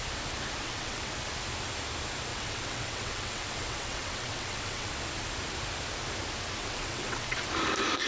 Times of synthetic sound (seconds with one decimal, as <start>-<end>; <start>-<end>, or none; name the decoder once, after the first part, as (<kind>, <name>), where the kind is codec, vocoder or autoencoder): 0.6-1.1 (vocoder, WaveNeXt); 2.3-4.9; 6.6-7.5